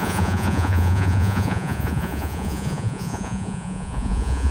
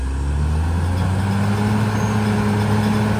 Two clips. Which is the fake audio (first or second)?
first